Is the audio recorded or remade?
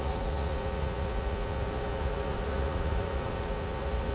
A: remade